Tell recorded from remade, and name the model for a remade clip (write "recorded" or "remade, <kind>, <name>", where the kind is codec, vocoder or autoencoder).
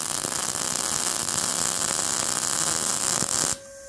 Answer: recorded